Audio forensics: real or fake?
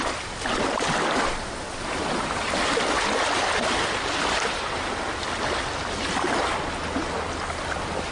real